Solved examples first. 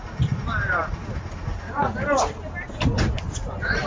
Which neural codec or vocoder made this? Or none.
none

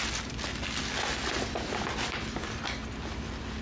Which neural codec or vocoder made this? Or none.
none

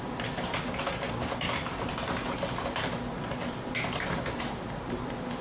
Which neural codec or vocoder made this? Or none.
none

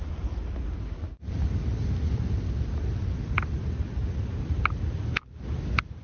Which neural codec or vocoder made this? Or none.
none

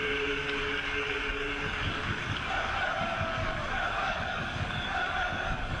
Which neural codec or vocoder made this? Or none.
codec, DAC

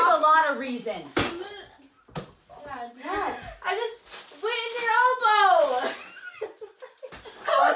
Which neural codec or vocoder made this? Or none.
none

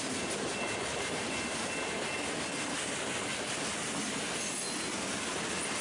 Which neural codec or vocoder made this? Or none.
none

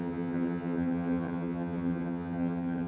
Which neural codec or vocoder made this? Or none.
vocoder, HiFi-GAN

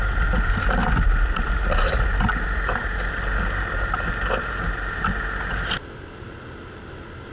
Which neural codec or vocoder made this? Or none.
none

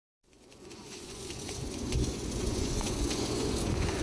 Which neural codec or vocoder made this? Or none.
vocoder, Vocos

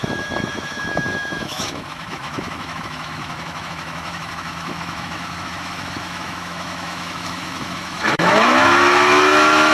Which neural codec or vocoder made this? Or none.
autoencoder, DAC-VAE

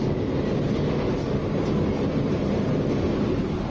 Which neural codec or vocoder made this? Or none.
none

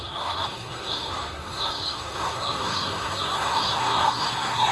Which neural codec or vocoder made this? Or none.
codec, SNAC